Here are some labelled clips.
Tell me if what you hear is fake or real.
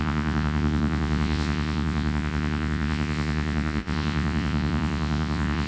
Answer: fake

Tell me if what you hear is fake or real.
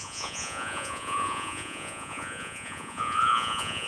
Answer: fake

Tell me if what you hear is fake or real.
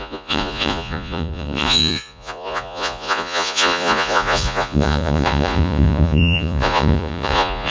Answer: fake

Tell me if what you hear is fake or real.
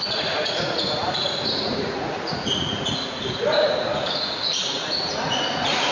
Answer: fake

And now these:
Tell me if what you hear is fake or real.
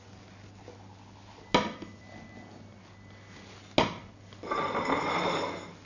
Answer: real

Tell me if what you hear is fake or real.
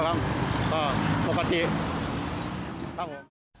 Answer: real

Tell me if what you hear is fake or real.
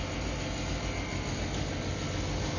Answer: real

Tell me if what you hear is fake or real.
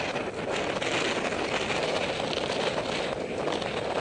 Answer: real